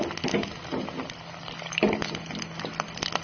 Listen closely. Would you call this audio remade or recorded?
recorded